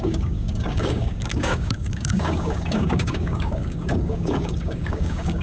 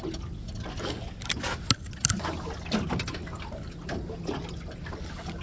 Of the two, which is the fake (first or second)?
first